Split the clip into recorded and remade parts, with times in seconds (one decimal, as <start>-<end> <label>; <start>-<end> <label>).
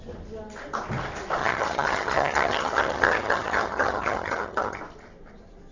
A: 0.0-1.4 recorded; 1.4-4.8 remade; 4.8-5.7 recorded